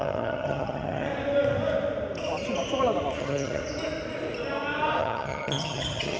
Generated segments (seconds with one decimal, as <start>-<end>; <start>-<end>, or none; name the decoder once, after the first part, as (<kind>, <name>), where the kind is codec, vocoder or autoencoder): 0.0-1.1 (vocoder, HiFi-GAN); 3.2-3.6; 5.0-6.2